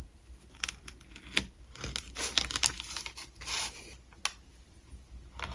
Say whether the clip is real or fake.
real